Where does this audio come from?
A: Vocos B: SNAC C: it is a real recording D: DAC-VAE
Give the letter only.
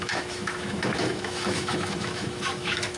D